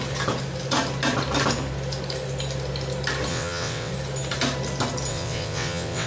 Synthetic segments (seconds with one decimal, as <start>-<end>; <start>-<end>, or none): 3.3-3.9; 5.1-6.1